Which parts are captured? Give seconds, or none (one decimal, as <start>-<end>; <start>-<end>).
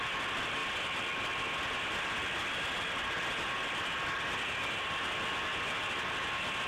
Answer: 0.0-6.7